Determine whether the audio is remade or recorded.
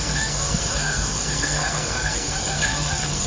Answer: remade